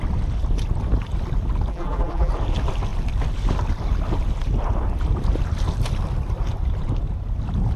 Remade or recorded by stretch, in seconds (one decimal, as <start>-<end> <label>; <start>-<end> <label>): 0.0-1.7 recorded; 1.7-2.3 remade; 2.3-7.8 recorded